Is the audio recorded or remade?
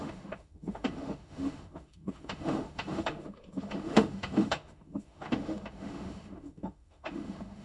remade